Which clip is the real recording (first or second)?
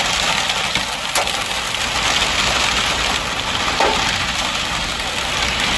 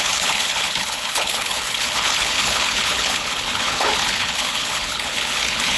first